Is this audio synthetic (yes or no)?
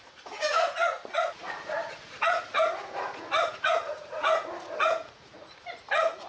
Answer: yes